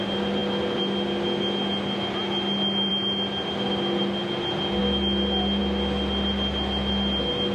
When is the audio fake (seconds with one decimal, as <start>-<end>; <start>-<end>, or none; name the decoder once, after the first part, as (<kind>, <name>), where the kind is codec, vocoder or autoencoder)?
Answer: none